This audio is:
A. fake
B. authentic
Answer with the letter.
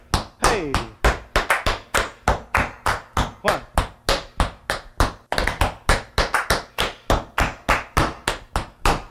B